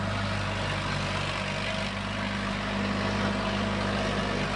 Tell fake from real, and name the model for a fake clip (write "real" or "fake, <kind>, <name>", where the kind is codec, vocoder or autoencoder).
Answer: real